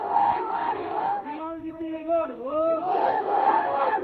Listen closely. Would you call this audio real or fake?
fake